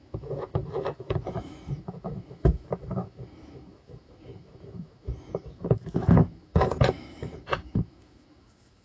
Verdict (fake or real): fake